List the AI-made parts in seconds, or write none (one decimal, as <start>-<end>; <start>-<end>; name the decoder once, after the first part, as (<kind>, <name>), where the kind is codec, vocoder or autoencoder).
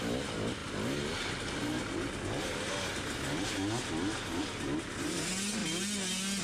none